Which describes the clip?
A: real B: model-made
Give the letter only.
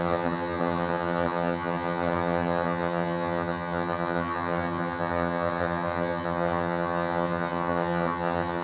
B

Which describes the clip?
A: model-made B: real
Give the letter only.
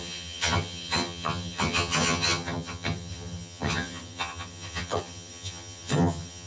A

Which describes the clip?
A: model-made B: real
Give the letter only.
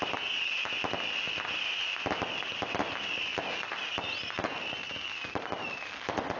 B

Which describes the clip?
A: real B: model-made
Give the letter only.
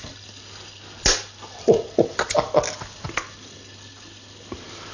A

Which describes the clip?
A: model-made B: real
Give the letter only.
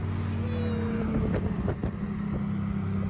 B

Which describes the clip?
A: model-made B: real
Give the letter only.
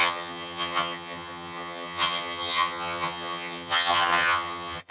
A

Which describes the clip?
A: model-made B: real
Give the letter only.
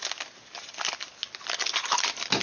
B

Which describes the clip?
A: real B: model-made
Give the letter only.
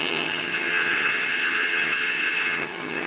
B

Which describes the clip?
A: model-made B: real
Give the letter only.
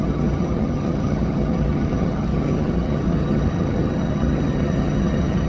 A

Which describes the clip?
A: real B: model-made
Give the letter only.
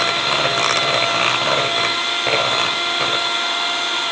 A